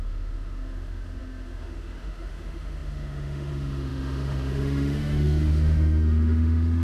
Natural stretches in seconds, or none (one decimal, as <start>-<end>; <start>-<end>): none